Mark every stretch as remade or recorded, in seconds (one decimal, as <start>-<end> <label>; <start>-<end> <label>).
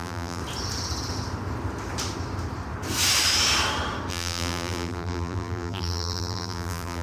0.0-0.4 remade; 0.4-4.1 recorded; 4.1-7.0 remade